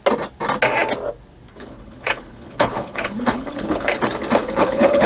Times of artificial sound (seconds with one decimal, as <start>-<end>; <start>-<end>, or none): 1.5-4.0; 4.4-5.1